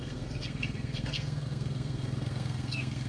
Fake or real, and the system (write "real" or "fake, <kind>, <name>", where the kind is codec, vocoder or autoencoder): fake, codec, SNAC